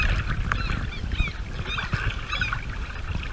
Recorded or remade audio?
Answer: recorded